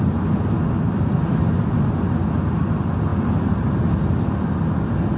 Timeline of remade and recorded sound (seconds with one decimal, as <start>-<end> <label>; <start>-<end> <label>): 0.0-5.2 recorded